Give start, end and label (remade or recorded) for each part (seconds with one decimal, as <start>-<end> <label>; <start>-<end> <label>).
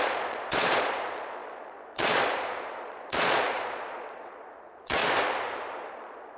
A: 0.0-5.0 remade; 5.0-5.9 recorded; 5.9-6.4 remade